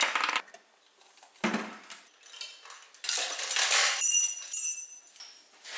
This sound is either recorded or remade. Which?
recorded